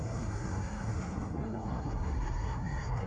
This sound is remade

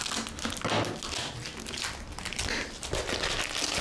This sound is recorded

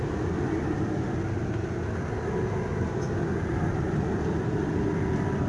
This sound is recorded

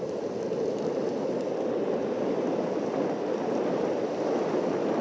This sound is recorded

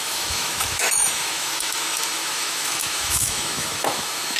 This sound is remade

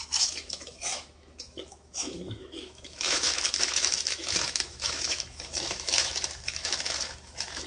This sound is remade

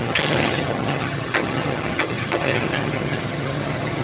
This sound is remade